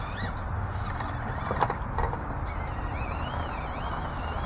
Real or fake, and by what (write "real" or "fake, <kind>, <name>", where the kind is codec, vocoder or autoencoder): real